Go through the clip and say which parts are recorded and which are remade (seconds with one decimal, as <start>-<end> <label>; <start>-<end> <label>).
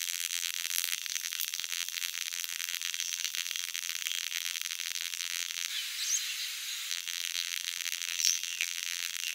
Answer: 0.0-5.7 remade; 5.7-6.9 recorded; 6.9-9.3 remade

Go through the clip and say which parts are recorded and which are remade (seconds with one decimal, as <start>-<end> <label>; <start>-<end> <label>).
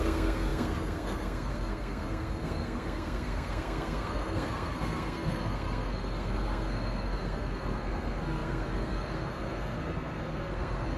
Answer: 0.0-11.0 remade